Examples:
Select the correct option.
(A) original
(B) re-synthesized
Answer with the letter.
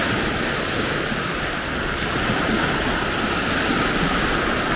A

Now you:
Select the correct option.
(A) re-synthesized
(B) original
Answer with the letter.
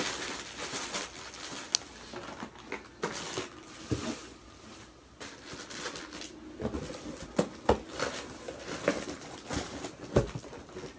B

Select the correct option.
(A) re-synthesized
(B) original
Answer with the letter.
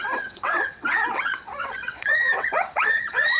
A